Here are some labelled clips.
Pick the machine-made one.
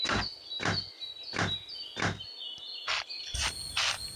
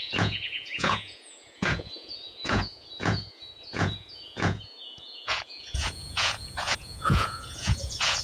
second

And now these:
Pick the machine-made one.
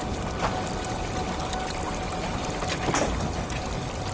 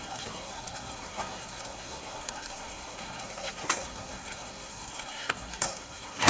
second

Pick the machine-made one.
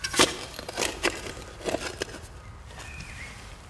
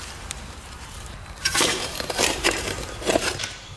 second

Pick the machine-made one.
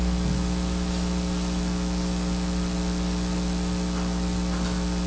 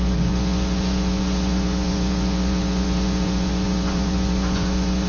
second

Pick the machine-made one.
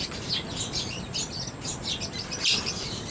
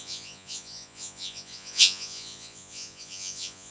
second